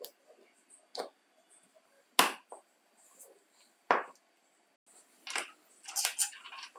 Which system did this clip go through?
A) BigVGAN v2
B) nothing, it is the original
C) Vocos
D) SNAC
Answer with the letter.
B